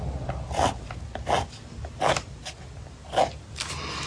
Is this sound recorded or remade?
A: recorded